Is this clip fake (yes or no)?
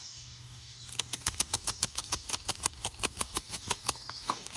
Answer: yes